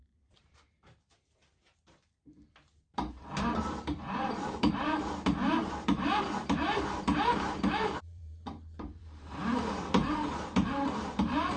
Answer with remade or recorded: remade